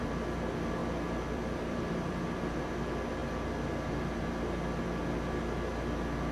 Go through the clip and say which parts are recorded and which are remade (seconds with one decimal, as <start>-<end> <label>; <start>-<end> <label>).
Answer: 0.0-0.8 recorded; 0.8-2.7 remade; 2.7-6.3 recorded